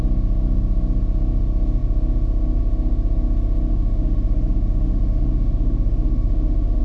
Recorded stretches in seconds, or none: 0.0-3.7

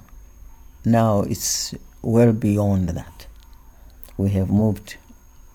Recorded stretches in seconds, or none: 0.0-5.5

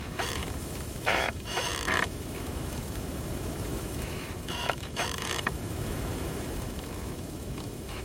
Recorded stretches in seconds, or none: none

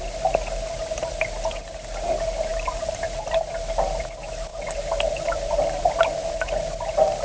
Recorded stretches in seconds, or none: 0.0-2.5; 4.0-4.5; 6.6-7.2